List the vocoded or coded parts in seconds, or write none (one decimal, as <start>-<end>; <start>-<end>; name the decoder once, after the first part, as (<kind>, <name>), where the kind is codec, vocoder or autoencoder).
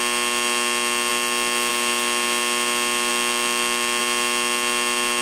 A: none